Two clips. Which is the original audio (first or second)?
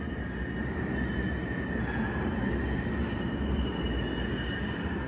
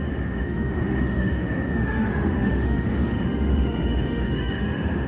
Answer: first